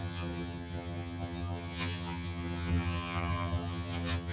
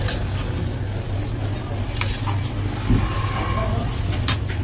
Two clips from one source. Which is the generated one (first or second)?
first